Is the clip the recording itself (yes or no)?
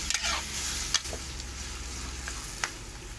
yes